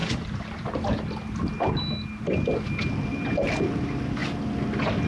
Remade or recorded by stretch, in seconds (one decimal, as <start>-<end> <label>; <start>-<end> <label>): 0.0-1.0 remade; 1.0-5.1 recorded